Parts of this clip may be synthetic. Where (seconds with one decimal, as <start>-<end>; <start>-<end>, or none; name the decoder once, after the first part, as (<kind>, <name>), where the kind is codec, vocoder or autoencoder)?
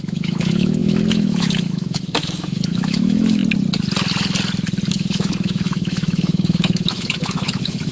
0.0-3.4 (autoencoder, DAC-VAE); 4.9-7.9